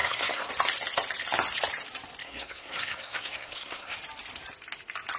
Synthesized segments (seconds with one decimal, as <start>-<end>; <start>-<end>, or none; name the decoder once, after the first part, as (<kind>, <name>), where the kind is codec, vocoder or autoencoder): 0.0-0.5 (codec, SNAC); 2.2-4.0